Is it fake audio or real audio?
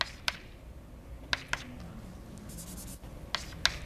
real